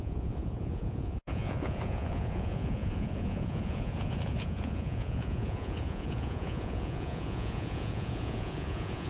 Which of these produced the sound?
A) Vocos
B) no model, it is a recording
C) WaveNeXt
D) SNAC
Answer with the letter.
A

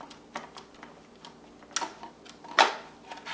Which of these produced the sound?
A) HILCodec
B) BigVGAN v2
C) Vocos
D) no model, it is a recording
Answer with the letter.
D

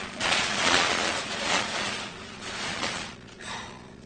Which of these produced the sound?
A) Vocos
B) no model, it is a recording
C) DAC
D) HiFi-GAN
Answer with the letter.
A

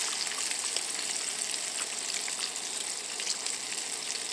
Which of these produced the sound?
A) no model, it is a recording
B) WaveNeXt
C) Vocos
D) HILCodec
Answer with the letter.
A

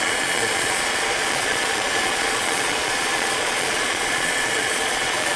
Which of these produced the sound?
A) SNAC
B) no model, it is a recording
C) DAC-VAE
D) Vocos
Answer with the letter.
D